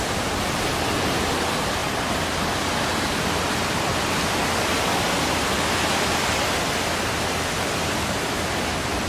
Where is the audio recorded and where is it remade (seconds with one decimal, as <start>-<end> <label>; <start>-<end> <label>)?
0.0-1.8 recorded; 1.8-6.4 remade; 6.4-9.1 recorded